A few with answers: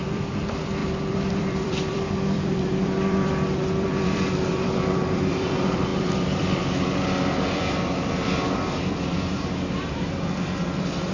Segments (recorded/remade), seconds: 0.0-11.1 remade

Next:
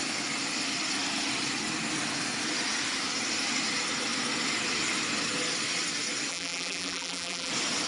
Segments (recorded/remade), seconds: 0.0-6.3 recorded; 6.3-7.5 remade; 7.5-7.9 recorded

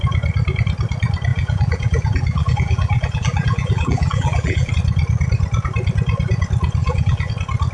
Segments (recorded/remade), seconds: 0.0-1.3 recorded; 1.3-4.7 remade; 4.7-6.8 recorded; 6.8-7.3 remade; 7.3-7.7 recorded